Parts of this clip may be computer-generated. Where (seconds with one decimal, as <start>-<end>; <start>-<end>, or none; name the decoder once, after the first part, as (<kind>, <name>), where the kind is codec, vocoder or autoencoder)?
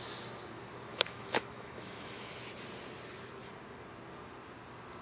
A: 0.9-2.3 (autoencoder, DAC-VAE)